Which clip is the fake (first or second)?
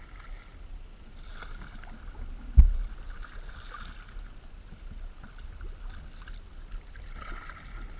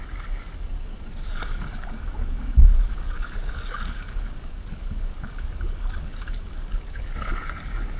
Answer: second